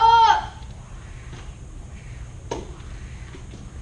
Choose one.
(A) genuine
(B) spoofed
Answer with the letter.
A